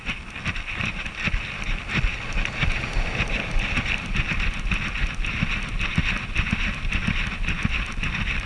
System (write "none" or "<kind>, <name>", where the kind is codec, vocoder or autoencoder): none